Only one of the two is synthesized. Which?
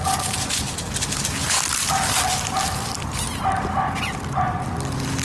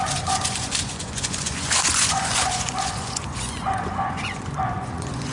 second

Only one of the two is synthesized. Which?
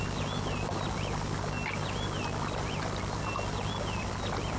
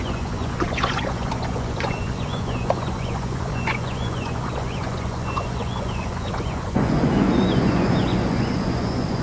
second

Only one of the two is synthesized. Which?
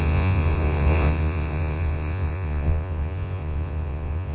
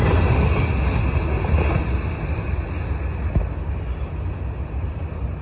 first